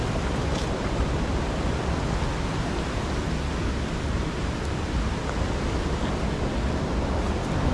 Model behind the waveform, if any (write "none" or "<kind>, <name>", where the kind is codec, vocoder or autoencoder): none